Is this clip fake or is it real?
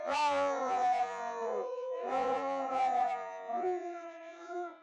fake